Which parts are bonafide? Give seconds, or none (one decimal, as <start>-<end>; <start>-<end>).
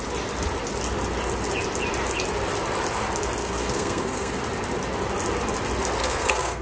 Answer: 0.0-3.4; 4.4-6.0